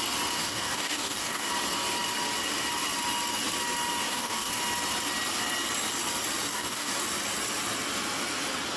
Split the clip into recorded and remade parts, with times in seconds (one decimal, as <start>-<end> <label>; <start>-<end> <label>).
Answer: 0.0-0.4 recorded; 0.4-1.5 remade; 1.5-4.0 recorded; 4.0-4.6 remade; 4.6-6.5 recorded; 6.5-7.0 remade; 7.0-8.8 recorded